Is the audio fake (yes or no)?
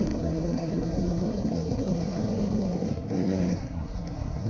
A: yes